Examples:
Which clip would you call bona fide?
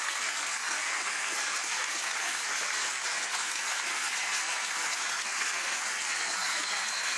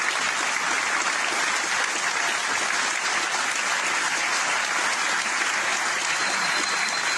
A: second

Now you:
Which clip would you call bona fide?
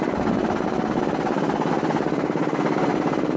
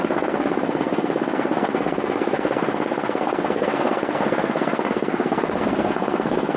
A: first